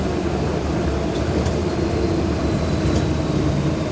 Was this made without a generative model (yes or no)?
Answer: yes